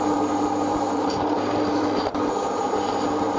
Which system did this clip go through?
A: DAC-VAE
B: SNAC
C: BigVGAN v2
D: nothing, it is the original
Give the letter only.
C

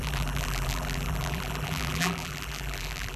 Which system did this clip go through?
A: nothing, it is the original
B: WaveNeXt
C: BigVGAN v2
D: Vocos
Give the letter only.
C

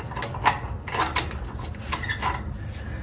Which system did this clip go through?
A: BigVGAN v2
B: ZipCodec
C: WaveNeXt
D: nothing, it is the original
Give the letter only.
D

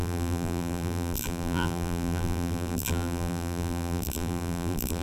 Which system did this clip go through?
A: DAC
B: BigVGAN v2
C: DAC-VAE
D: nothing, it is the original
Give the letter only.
B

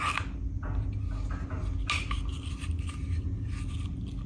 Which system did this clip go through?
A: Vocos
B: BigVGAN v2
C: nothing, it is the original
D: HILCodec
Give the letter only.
C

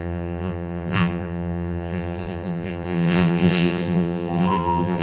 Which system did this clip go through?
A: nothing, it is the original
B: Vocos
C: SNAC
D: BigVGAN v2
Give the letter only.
D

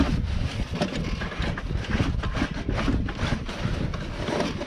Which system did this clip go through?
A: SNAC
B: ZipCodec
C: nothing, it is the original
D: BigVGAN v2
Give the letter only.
C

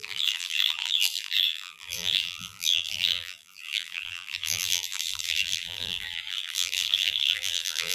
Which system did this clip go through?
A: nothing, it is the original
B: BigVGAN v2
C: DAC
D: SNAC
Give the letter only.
B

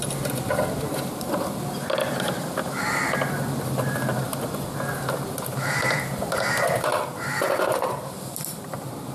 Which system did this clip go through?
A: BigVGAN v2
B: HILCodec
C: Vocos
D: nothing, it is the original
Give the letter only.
A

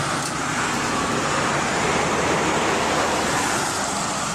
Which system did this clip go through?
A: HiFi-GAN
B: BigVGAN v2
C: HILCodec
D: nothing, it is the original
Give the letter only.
D